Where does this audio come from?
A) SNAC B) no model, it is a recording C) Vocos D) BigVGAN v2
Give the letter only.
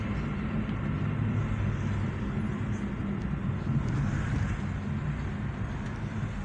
B